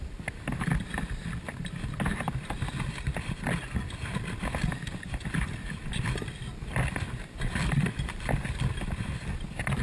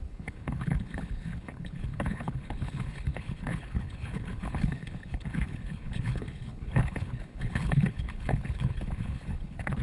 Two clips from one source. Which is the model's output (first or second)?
second